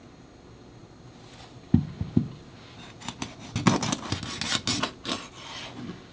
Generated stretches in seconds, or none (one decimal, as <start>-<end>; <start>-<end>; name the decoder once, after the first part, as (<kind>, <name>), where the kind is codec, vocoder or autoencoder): none